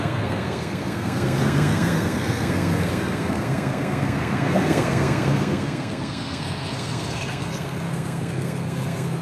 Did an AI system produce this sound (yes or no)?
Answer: yes